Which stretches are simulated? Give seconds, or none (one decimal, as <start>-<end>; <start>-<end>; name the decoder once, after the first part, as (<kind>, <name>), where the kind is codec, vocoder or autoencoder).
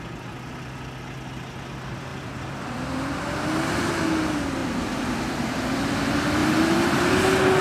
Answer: 2.1-3.2 (vocoder, BigVGAN v2); 4.6-5.8; 6.4-7.1